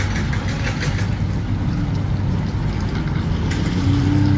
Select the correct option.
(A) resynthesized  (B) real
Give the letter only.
B